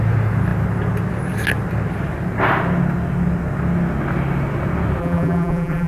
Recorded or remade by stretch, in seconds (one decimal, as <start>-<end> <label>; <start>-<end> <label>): 0.0-5.0 recorded; 5.0-5.9 remade